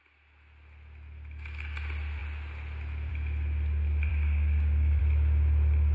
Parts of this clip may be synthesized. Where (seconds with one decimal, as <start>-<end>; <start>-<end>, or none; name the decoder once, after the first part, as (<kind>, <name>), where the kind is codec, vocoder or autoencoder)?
4.1-5.0 (codec, DAC)